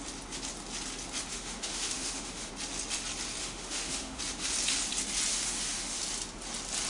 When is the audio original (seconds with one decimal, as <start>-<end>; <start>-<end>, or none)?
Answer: 0.0-1.3; 2.5-3.4; 4.2-5.3; 6.0-6.9